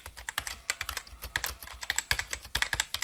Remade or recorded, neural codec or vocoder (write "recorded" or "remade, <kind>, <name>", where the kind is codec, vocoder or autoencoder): recorded